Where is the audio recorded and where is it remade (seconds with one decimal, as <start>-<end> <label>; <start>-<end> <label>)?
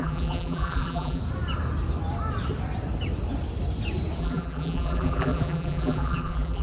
0.0-1.2 remade; 1.2-4.2 recorded; 4.2-6.6 remade